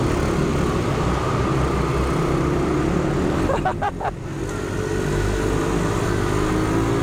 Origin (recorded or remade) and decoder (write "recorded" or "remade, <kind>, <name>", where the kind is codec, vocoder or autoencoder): recorded